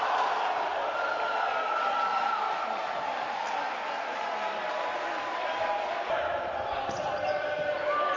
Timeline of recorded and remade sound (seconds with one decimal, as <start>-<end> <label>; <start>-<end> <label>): 0.0-0.8 recorded; 0.8-2.3 remade; 2.3-8.2 recorded